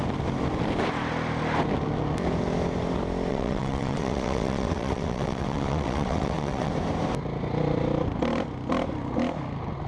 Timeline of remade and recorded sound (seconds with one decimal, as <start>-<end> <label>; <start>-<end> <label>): 0.0-3.3 recorded; 3.3-6.7 remade; 6.7-9.9 recorded